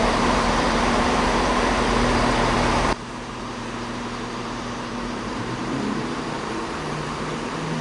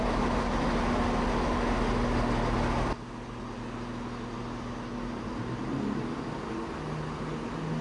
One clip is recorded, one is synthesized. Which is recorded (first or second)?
second